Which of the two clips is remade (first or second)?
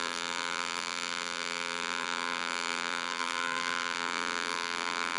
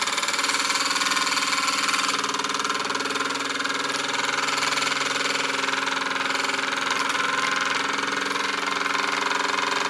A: first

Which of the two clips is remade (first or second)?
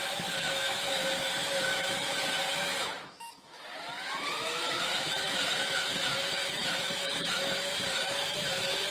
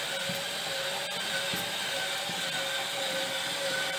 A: first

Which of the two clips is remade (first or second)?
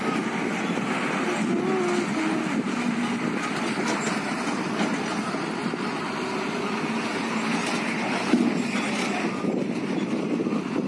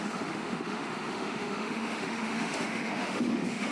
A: second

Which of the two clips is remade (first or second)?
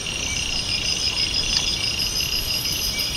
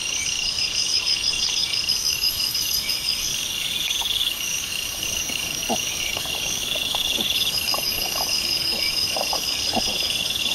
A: second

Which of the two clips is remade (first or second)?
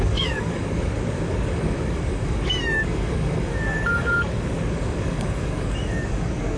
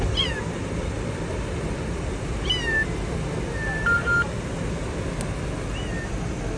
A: first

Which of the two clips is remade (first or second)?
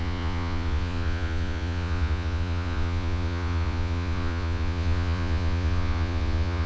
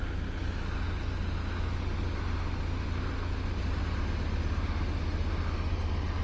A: first